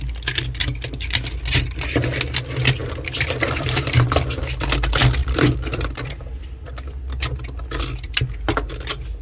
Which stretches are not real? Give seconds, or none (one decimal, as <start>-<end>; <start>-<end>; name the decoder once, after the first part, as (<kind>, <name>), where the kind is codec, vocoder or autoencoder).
2.8-4.4 (vocoder, BigVGAN v2); 5.2-6.4